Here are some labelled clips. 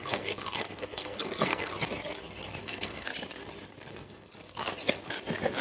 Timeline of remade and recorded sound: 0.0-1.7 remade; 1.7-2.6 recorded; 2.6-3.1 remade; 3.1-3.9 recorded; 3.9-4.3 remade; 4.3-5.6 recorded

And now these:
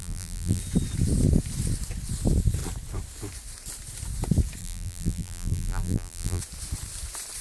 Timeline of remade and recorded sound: 0.0-0.6 remade; 0.6-4.6 recorded; 4.6-6.4 remade; 6.4-7.4 recorded

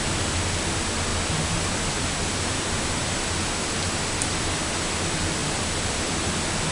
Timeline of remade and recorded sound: 0.0-6.7 recorded